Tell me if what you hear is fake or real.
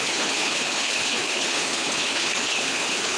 fake